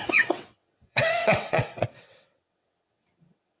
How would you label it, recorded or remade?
remade